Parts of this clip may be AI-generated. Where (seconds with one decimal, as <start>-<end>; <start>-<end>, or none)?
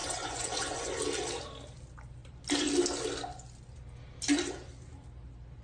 0.0-1.0